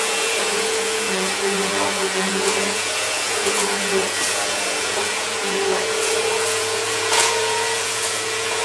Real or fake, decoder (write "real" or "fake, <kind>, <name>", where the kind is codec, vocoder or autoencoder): fake, vocoder, Vocos